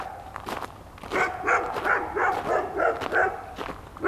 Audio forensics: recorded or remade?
recorded